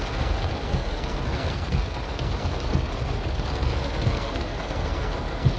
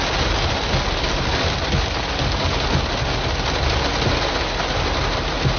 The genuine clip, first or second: second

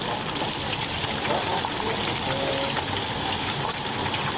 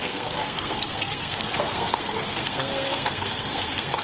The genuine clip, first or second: first